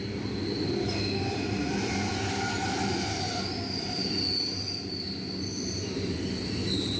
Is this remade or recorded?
recorded